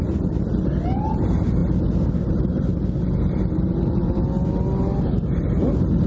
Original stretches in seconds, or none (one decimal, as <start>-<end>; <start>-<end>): 1.6-2.3; 2.7-3.2; 4.0-6.1